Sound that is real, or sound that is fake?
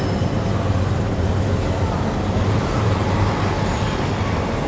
real